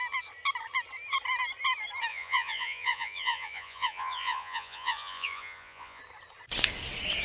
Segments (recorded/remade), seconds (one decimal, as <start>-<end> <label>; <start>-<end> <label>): 0.0-2.1 recorded; 2.1-6.0 remade; 6.0-7.2 recorded